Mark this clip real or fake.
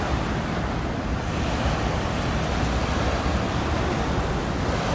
real